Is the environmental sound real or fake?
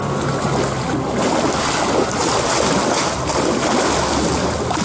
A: real